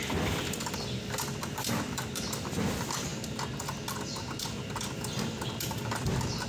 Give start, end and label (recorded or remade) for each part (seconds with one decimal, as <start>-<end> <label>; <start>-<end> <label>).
0.0-3.1 remade; 3.1-4.2 recorded; 4.2-6.5 remade